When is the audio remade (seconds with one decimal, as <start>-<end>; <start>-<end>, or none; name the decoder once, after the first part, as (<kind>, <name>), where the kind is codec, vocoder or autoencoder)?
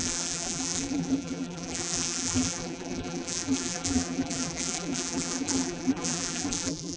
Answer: 0.0-7.0 (vocoder, BigVGAN v2)